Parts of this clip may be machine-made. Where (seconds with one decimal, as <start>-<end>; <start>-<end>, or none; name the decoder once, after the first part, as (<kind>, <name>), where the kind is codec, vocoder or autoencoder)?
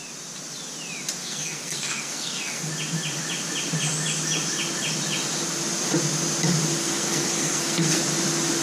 1.2-2.7 (codec, SNAC); 6.8-8.0